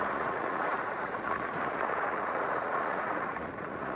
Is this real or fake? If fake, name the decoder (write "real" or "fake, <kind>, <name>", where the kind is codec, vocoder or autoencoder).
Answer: fake, vocoder, Vocos